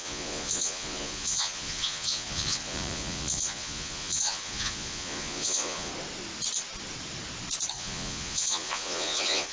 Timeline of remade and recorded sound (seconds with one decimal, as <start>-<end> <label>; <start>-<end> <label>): 0.0-5.9 remade; 5.9-7.7 recorded; 7.7-9.5 remade